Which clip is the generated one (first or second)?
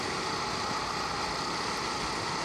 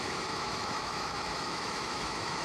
second